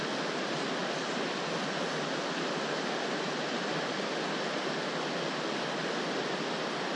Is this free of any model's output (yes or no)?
yes